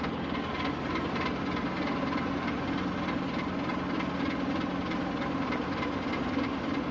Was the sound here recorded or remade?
recorded